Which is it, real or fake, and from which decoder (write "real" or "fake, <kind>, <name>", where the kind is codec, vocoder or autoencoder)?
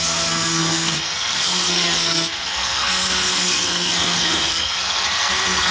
fake, codec, SNAC